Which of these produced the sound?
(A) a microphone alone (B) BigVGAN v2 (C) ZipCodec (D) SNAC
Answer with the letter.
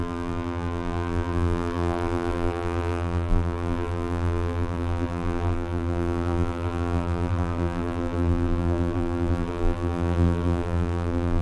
B